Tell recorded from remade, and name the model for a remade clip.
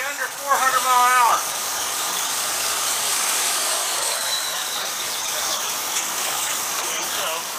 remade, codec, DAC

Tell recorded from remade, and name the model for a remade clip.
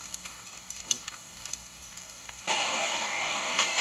remade, codec, DAC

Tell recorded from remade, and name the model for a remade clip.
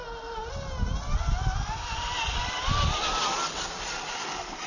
recorded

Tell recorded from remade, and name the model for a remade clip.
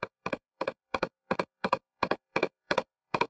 remade, codec, DAC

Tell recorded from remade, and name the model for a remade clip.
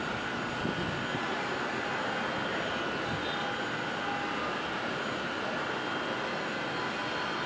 recorded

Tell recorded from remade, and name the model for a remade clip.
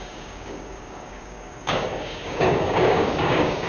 remade, codec, DAC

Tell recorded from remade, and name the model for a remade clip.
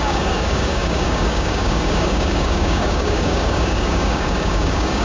remade, codec, DAC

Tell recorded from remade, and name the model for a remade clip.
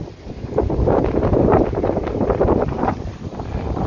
recorded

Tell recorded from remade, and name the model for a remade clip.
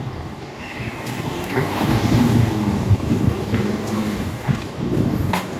remade, codec, DAC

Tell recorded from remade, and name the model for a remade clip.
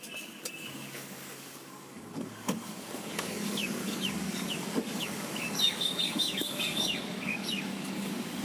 remade, codec, DAC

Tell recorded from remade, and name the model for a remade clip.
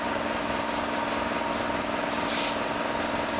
recorded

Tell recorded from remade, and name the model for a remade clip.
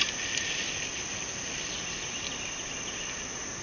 recorded